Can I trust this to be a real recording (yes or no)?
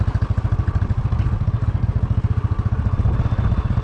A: yes